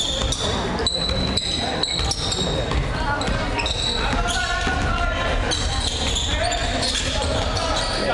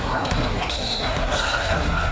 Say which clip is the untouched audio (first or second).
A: first